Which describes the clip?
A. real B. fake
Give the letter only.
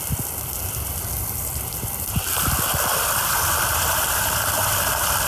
B